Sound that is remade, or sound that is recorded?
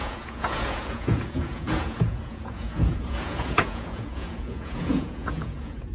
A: remade